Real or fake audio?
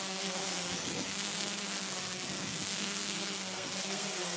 fake